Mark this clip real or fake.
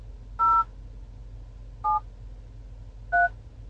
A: real